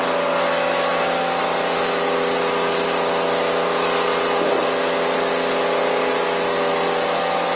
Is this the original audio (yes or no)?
yes